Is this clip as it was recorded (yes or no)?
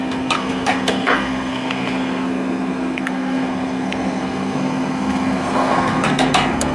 no